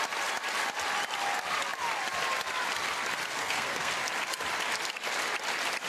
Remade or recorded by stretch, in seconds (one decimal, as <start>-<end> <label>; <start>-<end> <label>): 0.0-3.4 recorded; 3.4-3.9 remade; 3.9-5.9 recorded